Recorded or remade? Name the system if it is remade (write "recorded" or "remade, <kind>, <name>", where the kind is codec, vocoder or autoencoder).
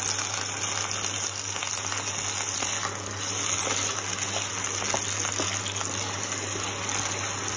recorded